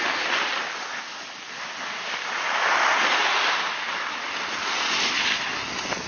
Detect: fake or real real